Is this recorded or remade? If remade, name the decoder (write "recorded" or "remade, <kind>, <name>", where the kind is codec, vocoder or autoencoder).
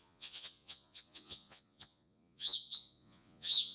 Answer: remade, vocoder, Vocos